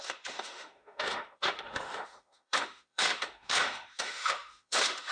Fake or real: fake